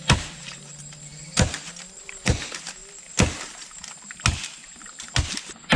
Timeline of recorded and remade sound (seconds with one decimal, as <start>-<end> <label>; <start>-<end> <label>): 0.0-2.8 remade; 2.8-5.8 recorded